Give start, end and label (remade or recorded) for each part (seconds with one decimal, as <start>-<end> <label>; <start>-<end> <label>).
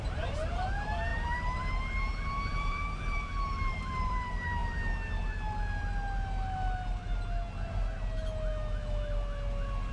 0.0-4.6 remade; 4.6-9.9 recorded